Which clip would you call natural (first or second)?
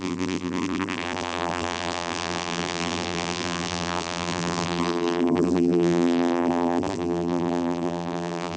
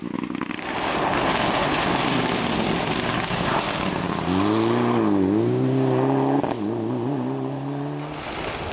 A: second